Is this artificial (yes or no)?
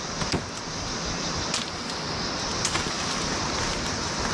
no